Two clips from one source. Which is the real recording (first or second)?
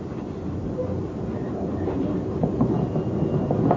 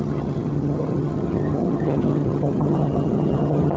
first